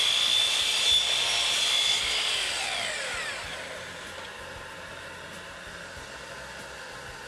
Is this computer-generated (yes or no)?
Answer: no